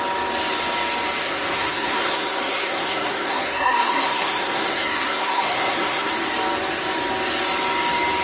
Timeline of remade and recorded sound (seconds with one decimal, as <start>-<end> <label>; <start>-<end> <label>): 0.0-1.2 recorded; 1.2-6.1 remade; 6.1-8.2 recorded